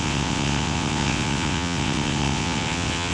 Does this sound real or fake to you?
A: fake